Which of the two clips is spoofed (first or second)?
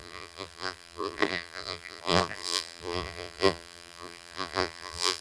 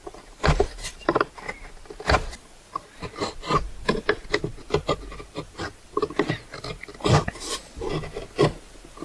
first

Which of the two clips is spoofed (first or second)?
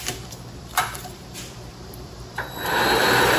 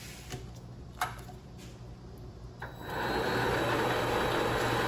first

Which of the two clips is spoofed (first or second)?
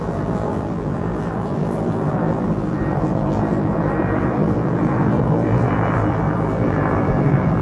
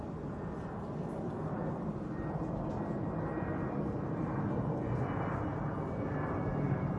first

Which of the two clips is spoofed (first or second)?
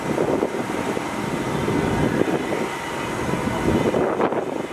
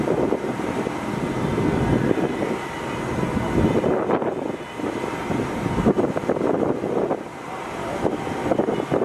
first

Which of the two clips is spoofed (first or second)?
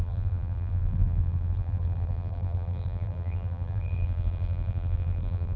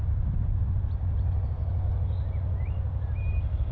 first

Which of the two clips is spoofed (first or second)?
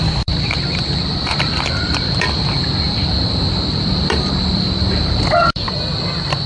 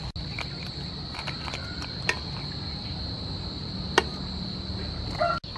first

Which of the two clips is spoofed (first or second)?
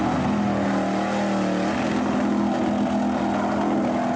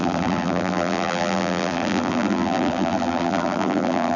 second